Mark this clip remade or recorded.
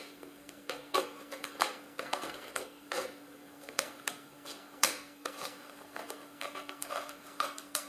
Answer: remade